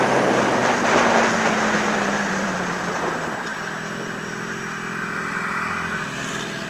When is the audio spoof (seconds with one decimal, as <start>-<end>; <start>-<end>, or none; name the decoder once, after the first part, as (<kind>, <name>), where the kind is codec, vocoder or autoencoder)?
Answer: 0.0-0.6 (vocoder, BigVGAN v2); 1.9-3.5